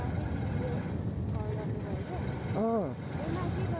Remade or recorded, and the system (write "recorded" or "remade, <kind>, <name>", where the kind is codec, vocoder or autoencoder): recorded